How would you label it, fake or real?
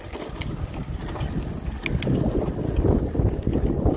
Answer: real